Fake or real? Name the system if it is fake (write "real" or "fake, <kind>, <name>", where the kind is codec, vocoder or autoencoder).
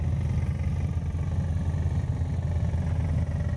real